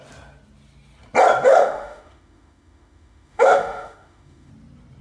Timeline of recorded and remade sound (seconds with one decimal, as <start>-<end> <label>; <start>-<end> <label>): 0.0-1.5 recorded; 1.5-4.5 remade; 4.5-5.0 recorded